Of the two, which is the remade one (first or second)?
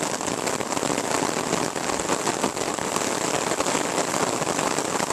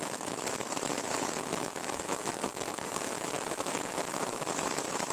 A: second